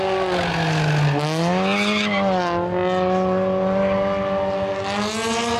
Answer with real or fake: real